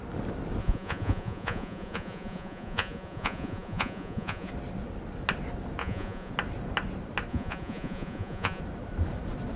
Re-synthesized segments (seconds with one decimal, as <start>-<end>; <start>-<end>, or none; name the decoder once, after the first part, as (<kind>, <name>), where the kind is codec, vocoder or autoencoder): 0.6-4.5 (vocoder, Vocos); 5.8-6.3; 7.3-8.6